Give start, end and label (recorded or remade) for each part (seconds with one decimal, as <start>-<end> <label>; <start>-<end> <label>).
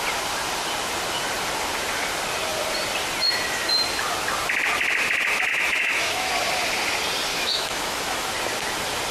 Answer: 0.0-5.5 recorded; 5.5-6.3 remade; 6.3-7.3 recorded; 7.3-8.3 remade; 8.3-9.1 recorded